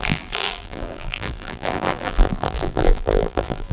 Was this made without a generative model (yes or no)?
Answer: no